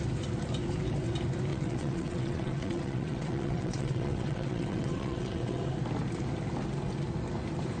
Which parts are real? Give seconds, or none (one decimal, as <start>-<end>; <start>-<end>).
0.0-1.5; 5.6-7.8